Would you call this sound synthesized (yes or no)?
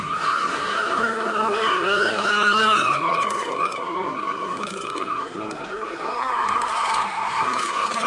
yes